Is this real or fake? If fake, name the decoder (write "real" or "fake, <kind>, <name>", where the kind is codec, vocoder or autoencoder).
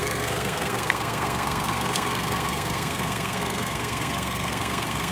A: fake, codec, SNAC